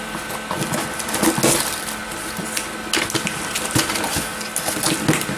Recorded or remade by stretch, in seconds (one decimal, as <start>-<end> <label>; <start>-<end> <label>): 0.0-5.4 recorded